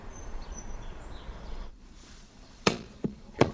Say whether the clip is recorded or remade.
remade